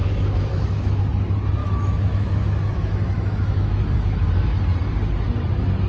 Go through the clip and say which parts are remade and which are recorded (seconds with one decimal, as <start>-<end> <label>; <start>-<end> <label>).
0.0-1.0 remade; 1.0-1.6 recorded; 1.6-4.6 remade; 4.6-5.9 recorded